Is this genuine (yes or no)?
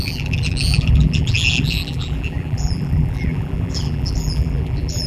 no